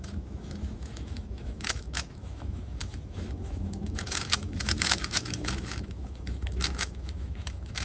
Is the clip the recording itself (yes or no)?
no